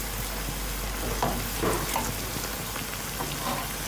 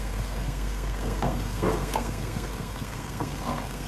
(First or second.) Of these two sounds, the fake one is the second